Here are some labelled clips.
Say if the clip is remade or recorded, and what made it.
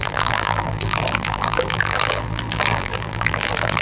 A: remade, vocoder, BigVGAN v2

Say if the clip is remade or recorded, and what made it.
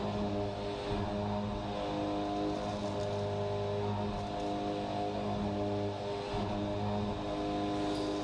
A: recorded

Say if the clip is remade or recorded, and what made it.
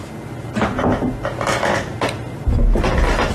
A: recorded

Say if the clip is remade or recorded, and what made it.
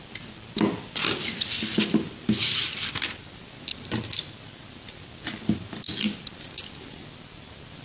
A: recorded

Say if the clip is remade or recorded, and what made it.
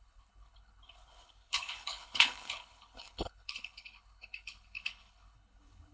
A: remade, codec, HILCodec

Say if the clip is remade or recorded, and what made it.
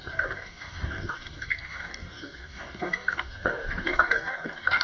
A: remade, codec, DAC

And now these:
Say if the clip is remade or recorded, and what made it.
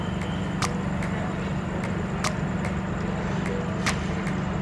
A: recorded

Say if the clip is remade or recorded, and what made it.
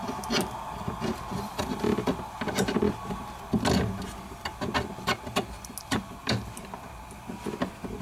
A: recorded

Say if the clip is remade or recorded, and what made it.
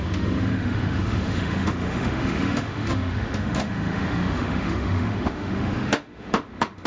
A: remade, autoencoder, DAC-VAE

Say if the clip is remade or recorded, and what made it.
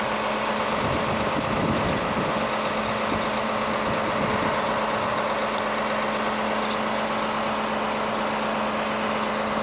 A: recorded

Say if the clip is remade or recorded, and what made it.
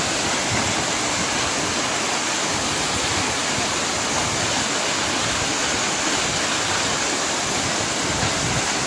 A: recorded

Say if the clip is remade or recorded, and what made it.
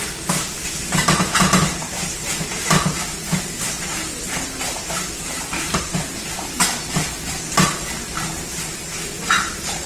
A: recorded